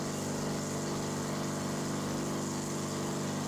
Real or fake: real